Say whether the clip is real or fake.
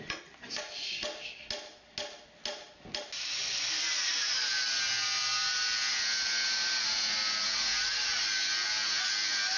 real